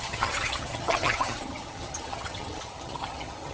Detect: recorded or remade remade